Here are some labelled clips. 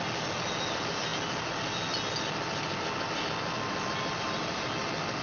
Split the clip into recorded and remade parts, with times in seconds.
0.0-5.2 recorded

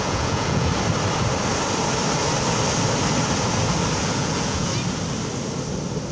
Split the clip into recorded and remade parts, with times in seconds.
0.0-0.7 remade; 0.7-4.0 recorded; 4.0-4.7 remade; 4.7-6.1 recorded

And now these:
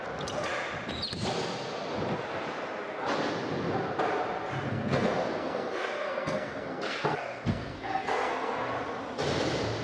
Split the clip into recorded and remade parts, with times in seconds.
0.0-4.7 recorded; 4.7-8.7 remade; 8.7-9.8 recorded